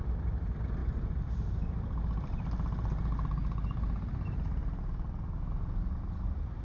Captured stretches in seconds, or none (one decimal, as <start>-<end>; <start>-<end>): 0.0-6.6